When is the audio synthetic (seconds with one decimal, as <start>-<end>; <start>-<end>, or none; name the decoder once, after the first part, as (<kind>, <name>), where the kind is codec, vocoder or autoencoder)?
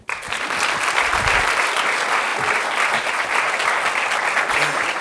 none